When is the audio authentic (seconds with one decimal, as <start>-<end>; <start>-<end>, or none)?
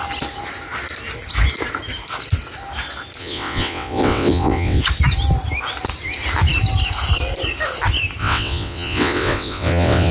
0.0-3.2; 4.8-8.2